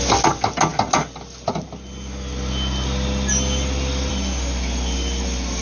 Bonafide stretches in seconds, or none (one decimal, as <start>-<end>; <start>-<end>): 0.0-5.6